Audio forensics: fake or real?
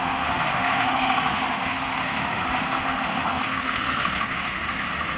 fake